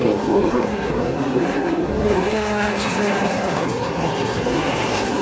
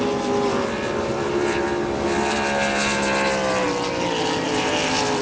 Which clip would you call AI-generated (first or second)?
first